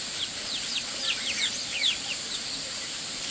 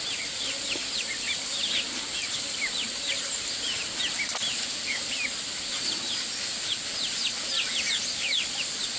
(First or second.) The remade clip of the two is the first